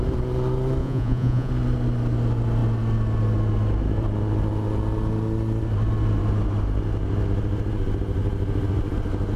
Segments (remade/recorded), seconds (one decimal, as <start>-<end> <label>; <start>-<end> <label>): 0.0-0.8 recorded; 0.8-1.5 remade; 1.5-9.4 recorded